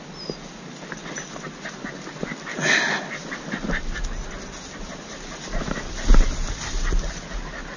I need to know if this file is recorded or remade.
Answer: recorded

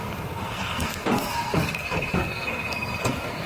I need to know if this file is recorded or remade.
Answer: remade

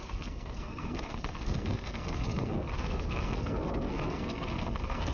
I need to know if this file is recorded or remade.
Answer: remade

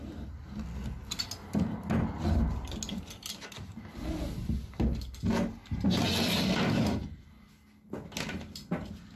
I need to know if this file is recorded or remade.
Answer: recorded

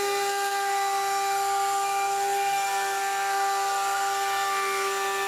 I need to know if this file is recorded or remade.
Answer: remade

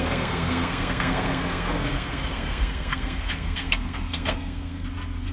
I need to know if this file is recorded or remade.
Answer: remade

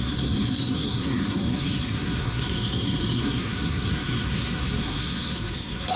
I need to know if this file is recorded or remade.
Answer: remade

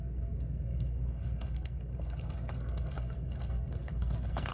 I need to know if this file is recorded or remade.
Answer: remade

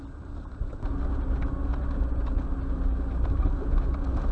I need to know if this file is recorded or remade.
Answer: recorded